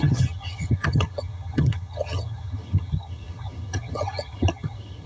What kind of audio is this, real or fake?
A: fake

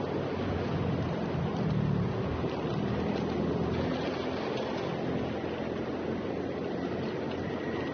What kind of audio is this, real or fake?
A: real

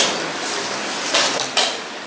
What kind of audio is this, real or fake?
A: real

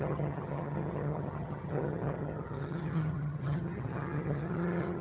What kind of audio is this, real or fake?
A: fake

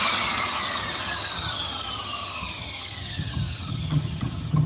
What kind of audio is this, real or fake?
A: fake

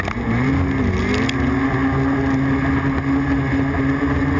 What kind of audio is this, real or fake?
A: real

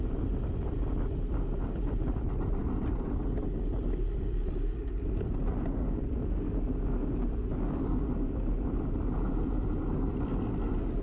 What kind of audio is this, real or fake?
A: real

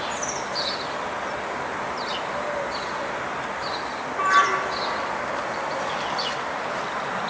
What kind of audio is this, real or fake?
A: real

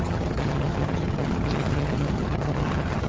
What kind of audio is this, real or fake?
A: fake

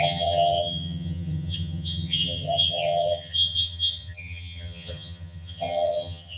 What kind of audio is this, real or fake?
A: fake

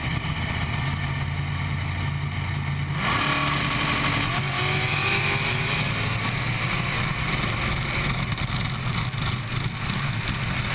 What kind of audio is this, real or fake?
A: real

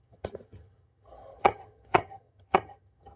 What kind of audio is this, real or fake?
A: fake